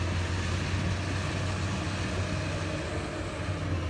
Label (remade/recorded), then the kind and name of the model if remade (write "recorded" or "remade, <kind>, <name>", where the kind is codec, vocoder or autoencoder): recorded